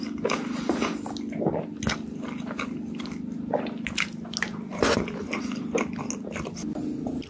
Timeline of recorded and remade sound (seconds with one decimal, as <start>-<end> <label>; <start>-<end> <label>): 0.0-7.3 recorded

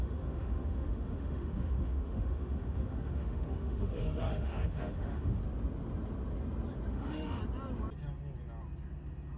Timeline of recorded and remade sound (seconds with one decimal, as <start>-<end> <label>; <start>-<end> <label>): 0.0-5.4 remade; 5.4-6.9 recorded; 6.9-7.4 remade; 7.4-9.4 recorded

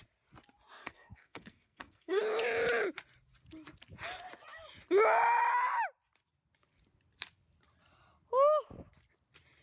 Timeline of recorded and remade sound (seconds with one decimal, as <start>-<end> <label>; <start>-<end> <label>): 0.0-0.8 recorded; 0.8-2.2 remade; 2.2-9.6 recorded

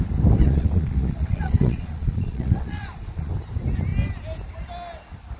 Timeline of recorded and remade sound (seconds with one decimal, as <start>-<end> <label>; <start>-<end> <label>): 0.0-0.4 recorded; 0.4-3.3 remade; 3.3-5.4 recorded

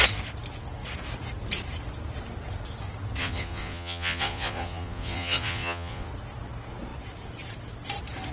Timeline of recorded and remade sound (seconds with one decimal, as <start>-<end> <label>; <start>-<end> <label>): 0.0-3.2 recorded; 3.2-6.1 remade; 6.1-8.3 recorded